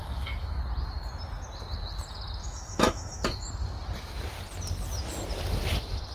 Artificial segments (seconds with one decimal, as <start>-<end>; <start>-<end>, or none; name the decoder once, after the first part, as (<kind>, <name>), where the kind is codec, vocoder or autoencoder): 0.0-0.6 (autoencoder, DAC-VAE); 2.4-3.5